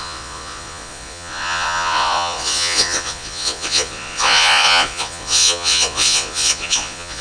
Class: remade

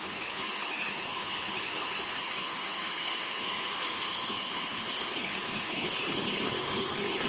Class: remade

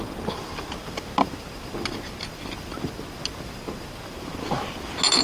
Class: recorded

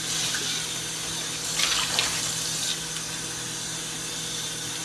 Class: recorded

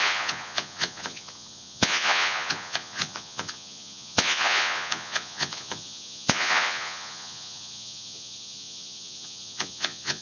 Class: remade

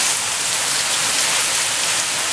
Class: recorded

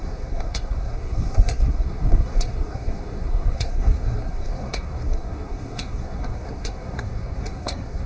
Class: remade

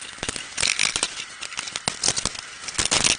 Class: recorded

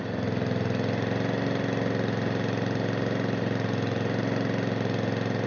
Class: recorded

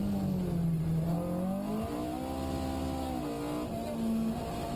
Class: recorded